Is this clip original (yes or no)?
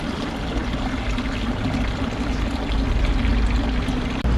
yes